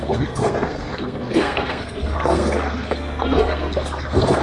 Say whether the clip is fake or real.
fake